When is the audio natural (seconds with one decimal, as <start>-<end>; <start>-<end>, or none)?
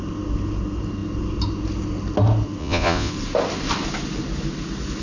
0.0-2.6; 3.1-5.0